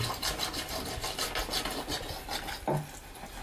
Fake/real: real